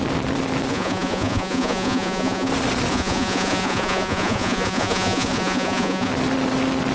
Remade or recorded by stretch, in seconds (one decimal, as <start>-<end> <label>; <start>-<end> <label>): 0.0-0.7 recorded; 0.7-2.5 remade; 2.5-2.9 recorded; 2.9-6.1 remade; 6.1-6.9 recorded